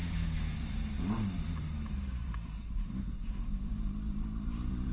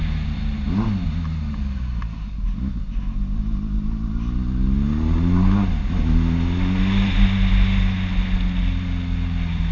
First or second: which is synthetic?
first